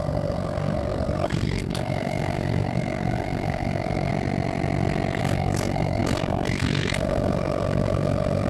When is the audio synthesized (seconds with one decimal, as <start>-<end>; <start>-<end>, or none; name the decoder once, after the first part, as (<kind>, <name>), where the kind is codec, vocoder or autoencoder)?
0.0-4.1 (codec, SNAC); 5.2-8.5